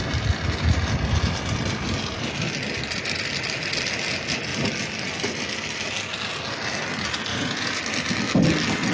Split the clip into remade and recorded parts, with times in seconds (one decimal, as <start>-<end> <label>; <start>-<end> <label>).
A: 0.0-7.3 recorded; 7.3-7.8 remade; 7.8-8.9 recorded